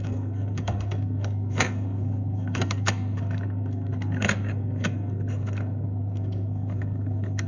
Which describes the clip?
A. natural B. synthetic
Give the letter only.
B